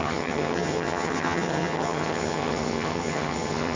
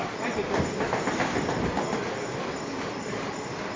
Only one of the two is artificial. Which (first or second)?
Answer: first